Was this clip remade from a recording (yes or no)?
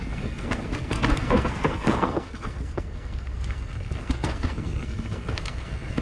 yes